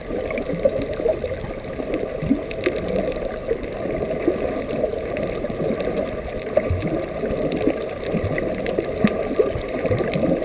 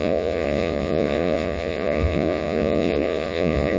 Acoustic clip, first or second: first